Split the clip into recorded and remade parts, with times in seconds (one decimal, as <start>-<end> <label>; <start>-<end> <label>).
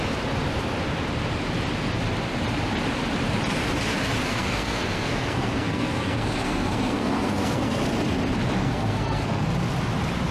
0.0-4.3 recorded; 4.3-7.8 remade; 7.8-8.6 recorded; 8.6-9.4 remade; 9.4-10.3 recorded